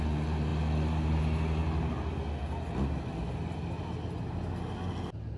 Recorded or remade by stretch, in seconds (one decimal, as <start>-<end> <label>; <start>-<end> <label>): 0.0-5.4 recorded